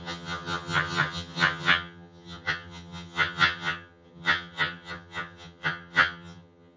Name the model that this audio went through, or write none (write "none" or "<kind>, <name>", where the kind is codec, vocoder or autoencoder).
vocoder, HiFi-GAN